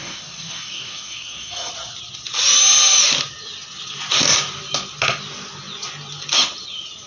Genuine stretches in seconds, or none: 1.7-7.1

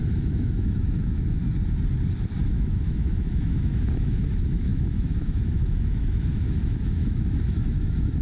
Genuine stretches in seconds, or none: 1.4-2.4

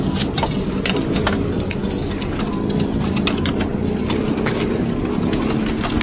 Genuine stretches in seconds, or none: 0.0-6.0

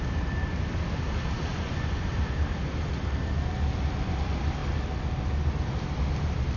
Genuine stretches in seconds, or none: 0.0-1.5; 2.1-6.6

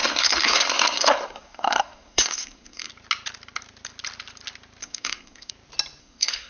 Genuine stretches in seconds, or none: 2.9-4.8; 5.5-6.0

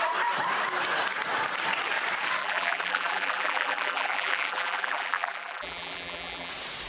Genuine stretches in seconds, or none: 0.0-2.4; 6.5-6.9

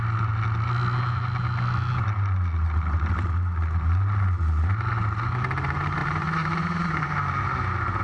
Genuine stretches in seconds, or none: 0.0-6.0; 7.1-8.0

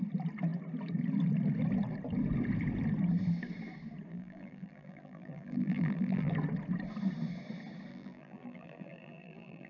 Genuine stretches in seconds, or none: 0.0-4.1; 6.3-7.9